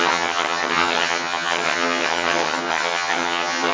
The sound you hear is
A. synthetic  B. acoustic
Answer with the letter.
A